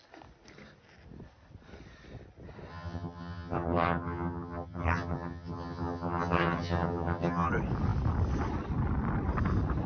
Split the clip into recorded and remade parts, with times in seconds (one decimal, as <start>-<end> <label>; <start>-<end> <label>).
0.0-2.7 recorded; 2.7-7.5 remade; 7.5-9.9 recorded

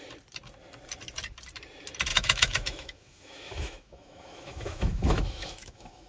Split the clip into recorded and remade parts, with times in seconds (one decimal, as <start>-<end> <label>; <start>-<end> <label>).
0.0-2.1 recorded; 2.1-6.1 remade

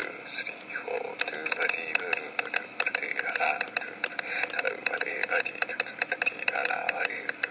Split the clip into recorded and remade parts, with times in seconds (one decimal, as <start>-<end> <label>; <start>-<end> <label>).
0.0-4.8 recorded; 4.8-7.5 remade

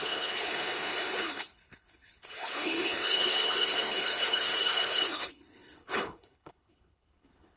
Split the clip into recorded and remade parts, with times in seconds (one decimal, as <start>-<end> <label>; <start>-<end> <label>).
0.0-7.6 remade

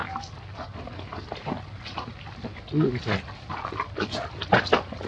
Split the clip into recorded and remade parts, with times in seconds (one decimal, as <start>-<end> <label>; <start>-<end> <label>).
0.0-5.1 recorded